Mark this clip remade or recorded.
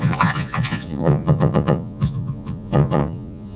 remade